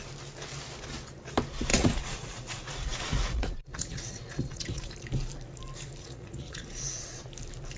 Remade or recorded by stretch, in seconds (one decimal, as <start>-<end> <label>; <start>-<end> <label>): 0.0-1.7 recorded; 1.7-4.9 remade; 4.9-6.0 recorded; 6.0-7.2 remade; 7.2-7.8 recorded